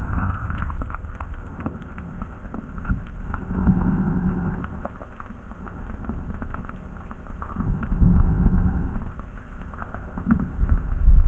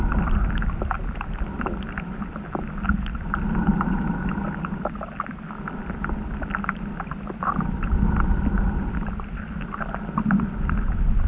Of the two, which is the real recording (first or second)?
second